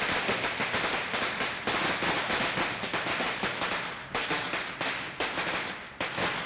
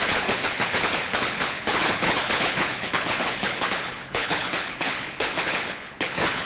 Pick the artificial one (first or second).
second